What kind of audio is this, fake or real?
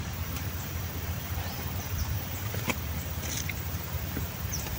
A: fake